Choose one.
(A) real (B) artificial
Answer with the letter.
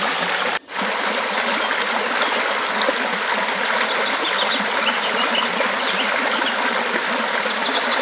A